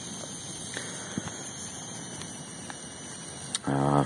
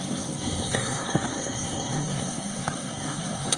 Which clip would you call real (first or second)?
first